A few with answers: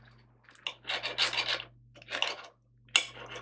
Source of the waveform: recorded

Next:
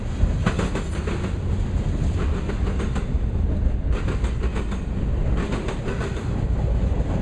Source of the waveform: recorded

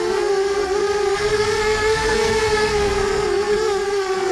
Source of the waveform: remade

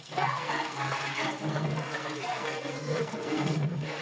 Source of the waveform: remade